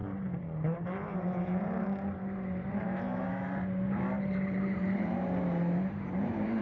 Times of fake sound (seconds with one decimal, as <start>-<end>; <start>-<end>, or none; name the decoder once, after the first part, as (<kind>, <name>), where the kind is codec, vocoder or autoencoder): 0.0-6.6 (vocoder, BigVGAN v2)